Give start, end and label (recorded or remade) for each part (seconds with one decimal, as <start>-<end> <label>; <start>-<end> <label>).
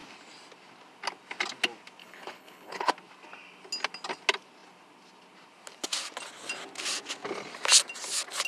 0.0-2.0 recorded; 2.0-2.9 remade; 2.9-8.5 recorded